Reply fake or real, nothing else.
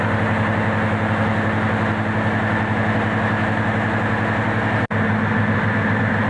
real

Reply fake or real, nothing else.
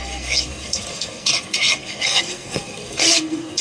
fake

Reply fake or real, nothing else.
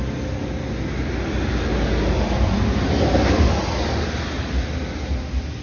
real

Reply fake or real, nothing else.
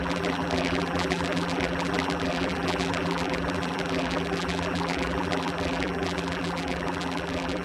fake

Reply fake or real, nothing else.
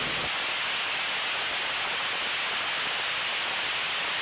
real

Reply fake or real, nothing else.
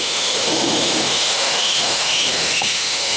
fake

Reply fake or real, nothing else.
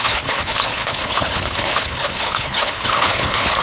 fake